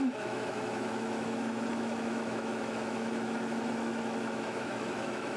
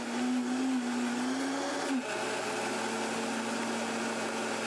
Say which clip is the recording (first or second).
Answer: second